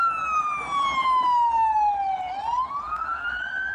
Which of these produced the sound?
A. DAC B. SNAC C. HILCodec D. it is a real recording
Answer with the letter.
D